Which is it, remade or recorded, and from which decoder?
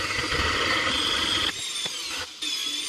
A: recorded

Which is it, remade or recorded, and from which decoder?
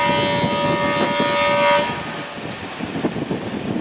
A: recorded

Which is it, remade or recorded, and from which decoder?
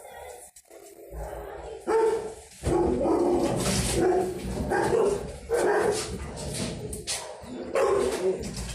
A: recorded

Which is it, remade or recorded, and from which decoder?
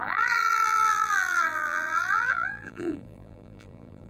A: remade, vocoder, BigVGAN v2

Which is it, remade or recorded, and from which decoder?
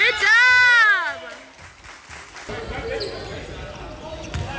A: recorded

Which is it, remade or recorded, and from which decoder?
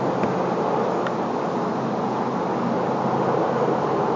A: recorded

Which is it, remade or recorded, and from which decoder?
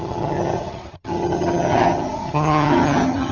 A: remade, vocoder, HiFi-GAN